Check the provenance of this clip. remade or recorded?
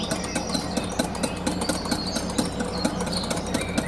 recorded